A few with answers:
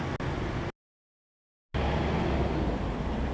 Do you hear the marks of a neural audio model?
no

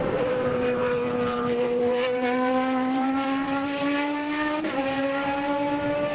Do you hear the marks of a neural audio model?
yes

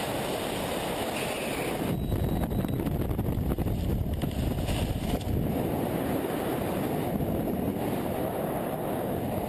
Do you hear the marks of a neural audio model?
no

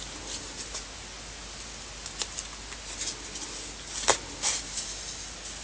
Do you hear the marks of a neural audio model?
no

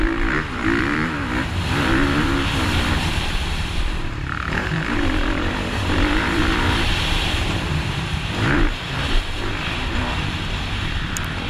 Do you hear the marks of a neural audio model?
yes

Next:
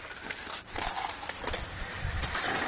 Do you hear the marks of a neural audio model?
yes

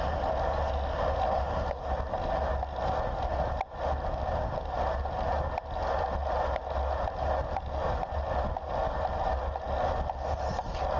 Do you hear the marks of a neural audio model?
no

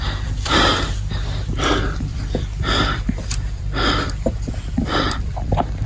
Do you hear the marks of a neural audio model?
yes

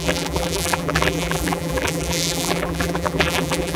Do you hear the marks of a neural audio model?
yes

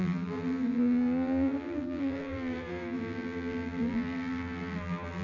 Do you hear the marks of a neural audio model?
yes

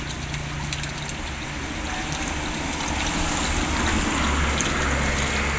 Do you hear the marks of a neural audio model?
no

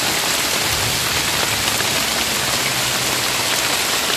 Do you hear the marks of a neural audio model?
no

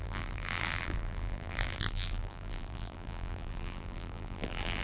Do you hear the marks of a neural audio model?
yes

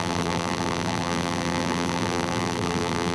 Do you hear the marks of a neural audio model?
yes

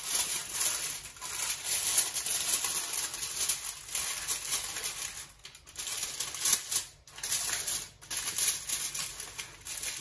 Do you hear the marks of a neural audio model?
no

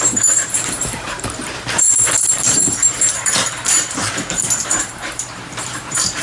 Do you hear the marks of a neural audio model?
yes